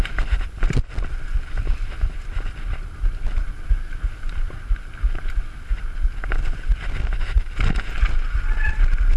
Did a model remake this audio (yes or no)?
no